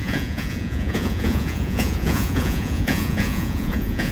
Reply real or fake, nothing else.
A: fake